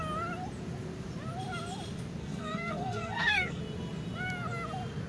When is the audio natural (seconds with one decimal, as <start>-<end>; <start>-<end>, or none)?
0.0-2.2; 3.6-5.1